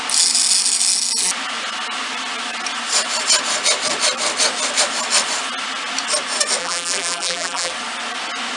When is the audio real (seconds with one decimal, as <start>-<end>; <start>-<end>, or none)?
0.0-6.6; 7.7-8.6